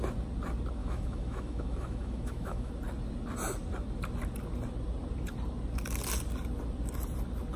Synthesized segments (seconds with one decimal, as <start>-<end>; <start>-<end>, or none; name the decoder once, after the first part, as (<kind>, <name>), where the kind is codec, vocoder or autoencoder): 0.8-2.7 (autoencoder, DAC-VAE)